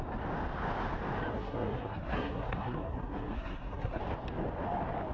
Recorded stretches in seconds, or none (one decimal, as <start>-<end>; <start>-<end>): 0.0-1.3; 4.0-5.1